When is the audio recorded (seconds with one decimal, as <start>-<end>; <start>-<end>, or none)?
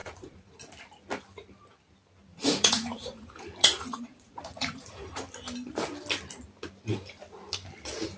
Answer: 0.6-2.3; 5.2-8.2